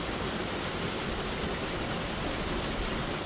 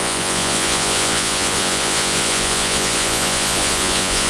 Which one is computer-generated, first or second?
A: second